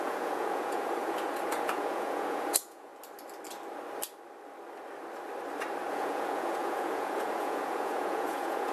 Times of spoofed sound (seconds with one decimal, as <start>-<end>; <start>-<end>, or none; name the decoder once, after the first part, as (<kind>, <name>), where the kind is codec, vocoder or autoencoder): 0.0-2.9 (vocoder, Vocos); 5.9-8.7